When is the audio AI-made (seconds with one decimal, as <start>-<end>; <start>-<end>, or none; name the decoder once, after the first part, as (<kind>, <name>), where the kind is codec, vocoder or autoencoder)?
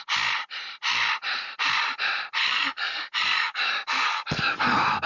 2.4-5.1 (codec, DAC)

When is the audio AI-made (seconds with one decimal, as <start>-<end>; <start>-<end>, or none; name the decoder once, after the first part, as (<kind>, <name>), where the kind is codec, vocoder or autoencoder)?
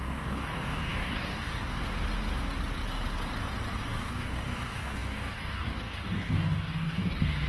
0.0-1.8 (codec, DAC); 3.8-7.5